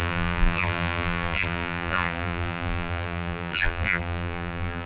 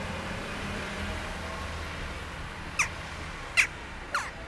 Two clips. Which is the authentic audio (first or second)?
second